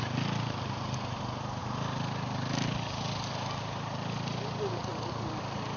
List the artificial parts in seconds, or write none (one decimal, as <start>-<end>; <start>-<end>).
none